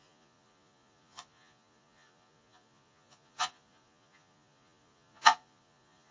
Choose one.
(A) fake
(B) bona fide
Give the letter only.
A